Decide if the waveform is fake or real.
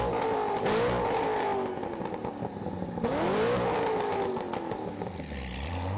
real